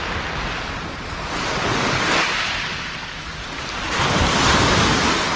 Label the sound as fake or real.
real